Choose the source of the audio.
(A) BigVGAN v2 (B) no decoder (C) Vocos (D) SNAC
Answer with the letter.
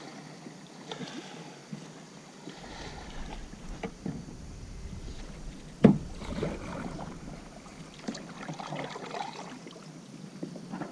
B